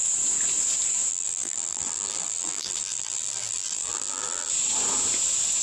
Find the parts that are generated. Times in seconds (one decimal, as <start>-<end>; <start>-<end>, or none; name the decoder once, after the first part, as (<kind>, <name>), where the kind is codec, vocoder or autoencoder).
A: 1.1-4.5 (vocoder, BigVGAN v2)